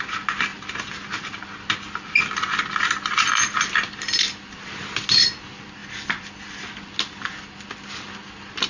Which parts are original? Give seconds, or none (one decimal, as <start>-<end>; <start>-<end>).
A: 0.0-8.7